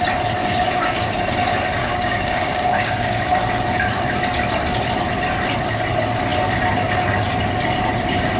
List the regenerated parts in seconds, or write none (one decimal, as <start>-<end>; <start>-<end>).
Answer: 0.4-1.2; 1.8-3.2